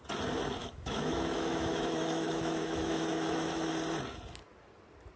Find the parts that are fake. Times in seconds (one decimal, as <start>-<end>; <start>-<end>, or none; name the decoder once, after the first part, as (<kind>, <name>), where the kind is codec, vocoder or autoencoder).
0.6-3.7 (autoencoder, DAC-VAE)